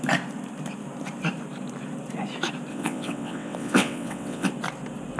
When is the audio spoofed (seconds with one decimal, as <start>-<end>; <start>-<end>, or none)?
2.7-4.5